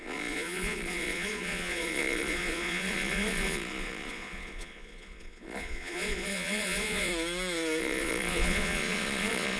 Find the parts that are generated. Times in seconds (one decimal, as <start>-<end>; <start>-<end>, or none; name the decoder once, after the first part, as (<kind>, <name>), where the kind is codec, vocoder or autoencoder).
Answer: 0.0-7.1 (vocoder, Vocos); 7.8-9.6